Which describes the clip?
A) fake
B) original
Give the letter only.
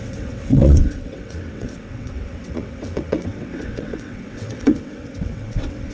A